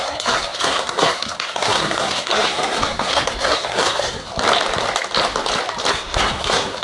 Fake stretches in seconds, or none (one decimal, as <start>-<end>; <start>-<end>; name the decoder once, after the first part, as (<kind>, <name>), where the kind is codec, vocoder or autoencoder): 0.0-4.3 (codec, SNAC); 5.9-6.8